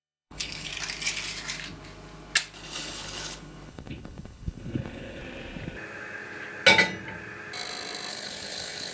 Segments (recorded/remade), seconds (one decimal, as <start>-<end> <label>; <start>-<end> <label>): 0.0-0.7 remade; 0.7-2.6 recorded; 2.6-5.2 remade; 5.2-8.1 recorded; 8.1-8.9 remade